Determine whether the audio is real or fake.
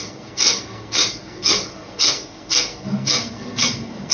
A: fake